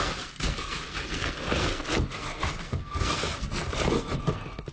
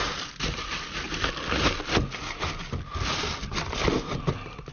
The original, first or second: second